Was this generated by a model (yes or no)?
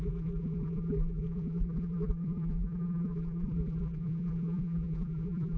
yes